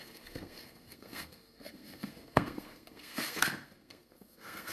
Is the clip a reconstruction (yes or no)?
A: yes